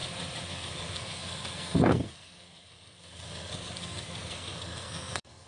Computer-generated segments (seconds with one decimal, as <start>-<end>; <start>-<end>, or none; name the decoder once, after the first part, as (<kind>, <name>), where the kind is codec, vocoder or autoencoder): 0.5-5.5 (codec, SNAC)